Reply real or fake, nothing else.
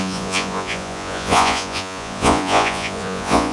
fake